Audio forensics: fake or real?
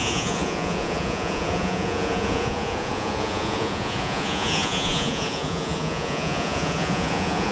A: fake